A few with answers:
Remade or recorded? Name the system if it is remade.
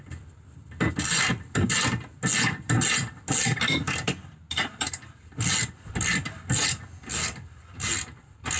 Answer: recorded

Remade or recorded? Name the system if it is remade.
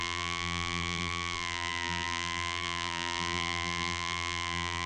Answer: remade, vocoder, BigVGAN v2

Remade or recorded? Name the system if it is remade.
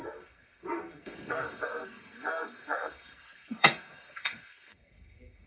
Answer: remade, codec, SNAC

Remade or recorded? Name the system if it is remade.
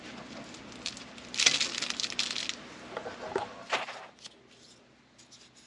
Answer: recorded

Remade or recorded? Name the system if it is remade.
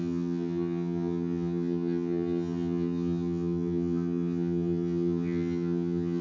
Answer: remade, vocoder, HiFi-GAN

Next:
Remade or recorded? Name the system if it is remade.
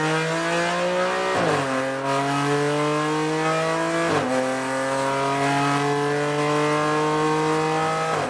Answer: recorded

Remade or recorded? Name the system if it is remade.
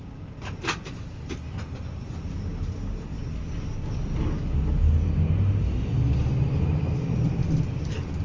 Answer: recorded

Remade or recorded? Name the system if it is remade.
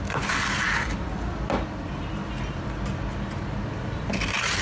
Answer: remade, vocoder, BigVGAN v2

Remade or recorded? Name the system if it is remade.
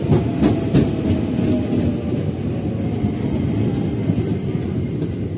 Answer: recorded